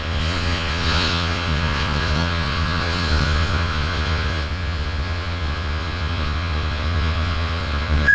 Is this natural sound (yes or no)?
no